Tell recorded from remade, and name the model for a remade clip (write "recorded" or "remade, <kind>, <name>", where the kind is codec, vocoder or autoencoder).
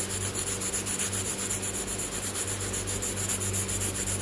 recorded